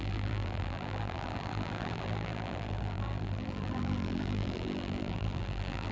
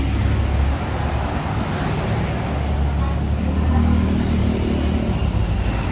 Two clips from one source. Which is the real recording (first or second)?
second